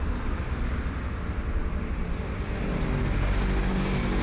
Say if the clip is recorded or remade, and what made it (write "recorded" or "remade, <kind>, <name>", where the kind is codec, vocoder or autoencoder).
recorded